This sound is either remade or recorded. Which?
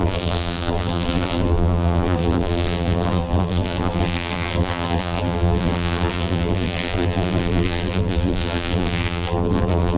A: remade